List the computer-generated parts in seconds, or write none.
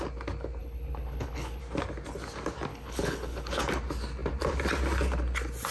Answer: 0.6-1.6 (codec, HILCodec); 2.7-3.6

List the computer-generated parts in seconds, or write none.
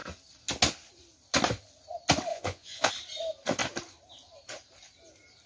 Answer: 2.3-2.9 (vocoder, Vocos)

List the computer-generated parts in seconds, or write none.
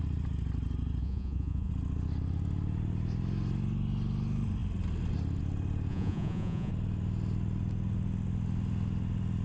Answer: 1.0-1.7 (vocoder, Vocos); 5.9-6.7